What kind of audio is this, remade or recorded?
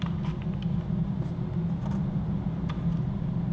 recorded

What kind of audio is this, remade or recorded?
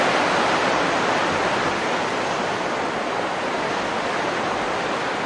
recorded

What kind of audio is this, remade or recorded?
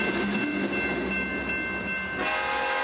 recorded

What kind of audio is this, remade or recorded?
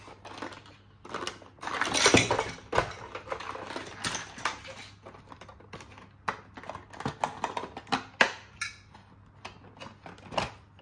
recorded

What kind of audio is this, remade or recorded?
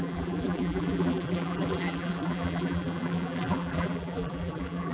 remade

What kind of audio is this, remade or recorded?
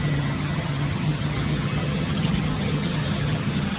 remade